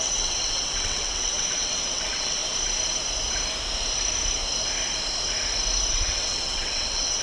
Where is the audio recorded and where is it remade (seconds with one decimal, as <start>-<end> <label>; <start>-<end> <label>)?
0.0-2.4 remade; 2.4-5.9 recorded; 5.9-7.2 remade

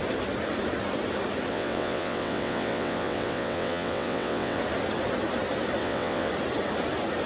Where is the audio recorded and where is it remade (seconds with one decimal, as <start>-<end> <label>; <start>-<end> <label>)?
0.0-1.5 recorded; 1.5-4.6 remade; 4.6-5.8 recorded; 5.8-6.3 remade; 6.3-7.3 recorded